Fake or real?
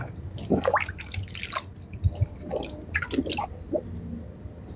real